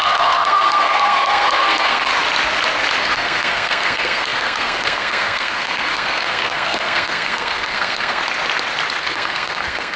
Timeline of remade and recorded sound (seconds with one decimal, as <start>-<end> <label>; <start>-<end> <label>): 0.0-2.1 remade; 2.1-3.0 recorded; 3.0-8.2 remade; 8.2-9.0 recorded; 9.0-10.0 remade